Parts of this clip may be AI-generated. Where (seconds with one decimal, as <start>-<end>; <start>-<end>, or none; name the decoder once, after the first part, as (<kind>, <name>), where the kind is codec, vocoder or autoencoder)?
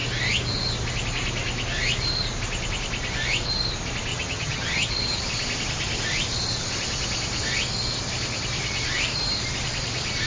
4.1-4.9 (vocoder, HiFi-GAN)